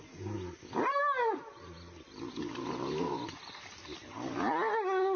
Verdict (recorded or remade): recorded